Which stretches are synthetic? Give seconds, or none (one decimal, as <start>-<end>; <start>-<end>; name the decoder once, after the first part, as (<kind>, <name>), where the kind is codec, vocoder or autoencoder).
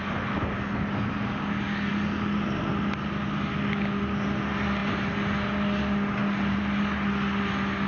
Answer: none